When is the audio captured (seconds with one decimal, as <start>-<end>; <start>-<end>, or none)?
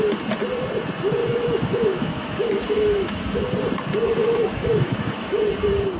0.0-1.2; 3.5-4.2; 5.4-6.0